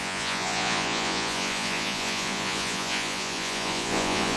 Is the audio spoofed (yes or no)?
yes